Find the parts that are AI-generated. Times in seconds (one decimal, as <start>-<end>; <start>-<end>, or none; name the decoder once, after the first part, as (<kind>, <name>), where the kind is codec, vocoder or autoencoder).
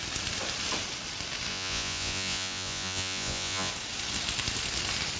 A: 1.5-3.7 (vocoder, Vocos)